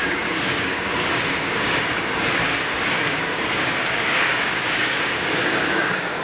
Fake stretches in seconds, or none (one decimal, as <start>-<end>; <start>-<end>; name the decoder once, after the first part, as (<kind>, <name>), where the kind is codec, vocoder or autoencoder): 0.0-1.8 (codec, DAC); 2.4-6.2